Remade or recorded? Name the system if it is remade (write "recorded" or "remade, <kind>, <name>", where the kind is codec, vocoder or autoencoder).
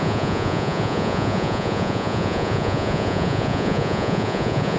remade, vocoder, Vocos